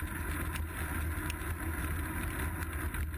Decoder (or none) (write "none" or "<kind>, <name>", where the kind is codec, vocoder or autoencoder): none